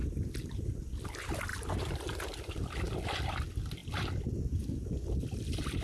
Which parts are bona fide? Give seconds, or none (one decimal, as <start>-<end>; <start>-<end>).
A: 0.0-1.5; 2.5-5.8